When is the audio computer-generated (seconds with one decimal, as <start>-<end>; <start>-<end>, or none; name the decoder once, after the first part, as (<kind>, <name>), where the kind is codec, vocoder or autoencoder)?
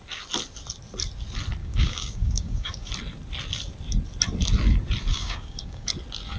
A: 1.6-2.9 (codec, DAC); 5.1-5.9